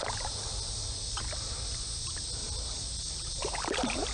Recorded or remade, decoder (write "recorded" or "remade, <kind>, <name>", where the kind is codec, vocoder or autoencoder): recorded